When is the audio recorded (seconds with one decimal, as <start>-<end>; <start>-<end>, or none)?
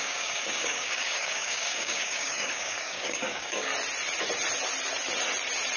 3.7-5.8